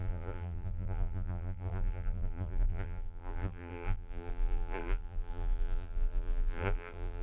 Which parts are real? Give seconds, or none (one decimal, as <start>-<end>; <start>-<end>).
none